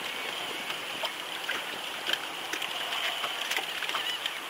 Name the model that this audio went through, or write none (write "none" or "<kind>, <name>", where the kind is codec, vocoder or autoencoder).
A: none